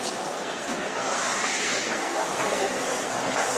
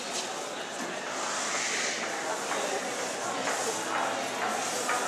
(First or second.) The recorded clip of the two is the second